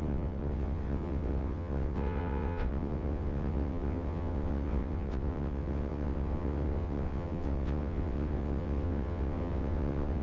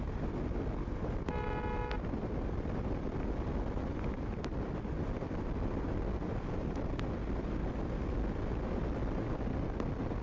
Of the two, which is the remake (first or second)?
first